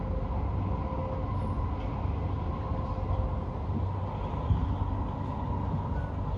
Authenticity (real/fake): real